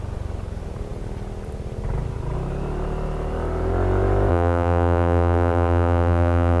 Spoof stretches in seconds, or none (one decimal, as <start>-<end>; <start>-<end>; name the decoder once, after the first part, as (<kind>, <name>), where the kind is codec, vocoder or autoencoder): 4.3-6.6 (vocoder, BigVGAN v2)